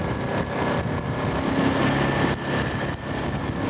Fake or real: real